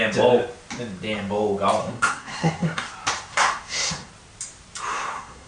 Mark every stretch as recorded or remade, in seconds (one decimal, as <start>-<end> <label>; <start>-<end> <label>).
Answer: 0.0-1.8 recorded; 1.8-2.9 remade; 2.9-3.3 recorded; 3.3-4.1 remade; 4.1-4.9 recorded; 4.9-5.5 remade